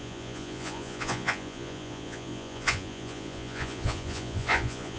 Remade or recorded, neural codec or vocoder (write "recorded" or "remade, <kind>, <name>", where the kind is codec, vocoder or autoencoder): remade, vocoder, Vocos